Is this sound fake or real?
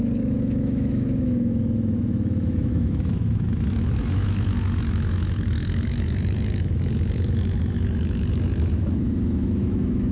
fake